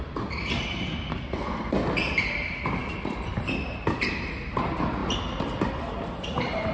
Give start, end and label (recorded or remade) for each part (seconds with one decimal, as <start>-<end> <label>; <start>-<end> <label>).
0.0-1.1 recorded; 1.1-1.7 remade; 1.7-6.7 recorded